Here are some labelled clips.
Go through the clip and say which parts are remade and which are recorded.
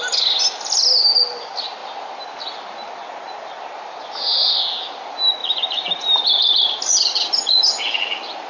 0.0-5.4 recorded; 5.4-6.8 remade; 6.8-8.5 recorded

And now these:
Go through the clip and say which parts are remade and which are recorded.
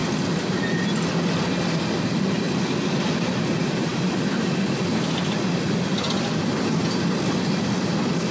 0.0-8.3 recorded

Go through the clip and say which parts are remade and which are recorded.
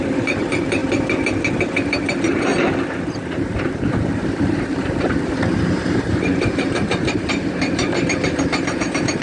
0.0-0.8 remade; 0.8-1.6 recorded; 1.6-2.5 remade; 2.5-3.1 recorded; 3.1-9.2 remade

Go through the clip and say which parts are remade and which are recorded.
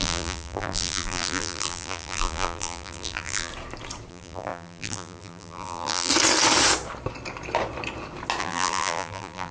0.0-3.5 remade; 3.5-4.1 recorded; 4.1-6.1 remade; 6.1-8.4 recorded; 8.4-9.5 remade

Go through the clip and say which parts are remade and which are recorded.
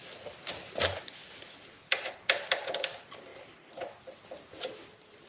0.0-1.2 recorded; 1.2-2.1 remade; 2.1-3.3 recorded; 3.3-5.3 remade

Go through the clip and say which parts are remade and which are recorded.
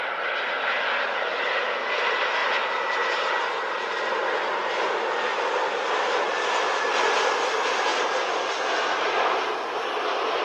0.0-2.4 recorded; 2.4-7.0 remade; 7.0-7.9 recorded; 7.9-8.6 remade; 8.6-10.4 recorded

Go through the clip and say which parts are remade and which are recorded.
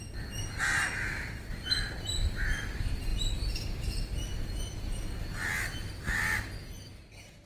0.0-7.5 recorded